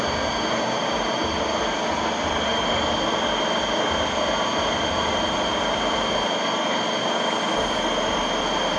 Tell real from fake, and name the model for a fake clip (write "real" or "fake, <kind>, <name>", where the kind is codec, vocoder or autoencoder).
real